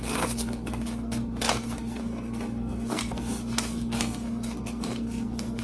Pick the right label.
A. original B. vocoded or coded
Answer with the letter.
B